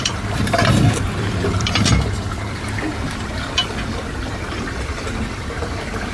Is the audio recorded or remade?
remade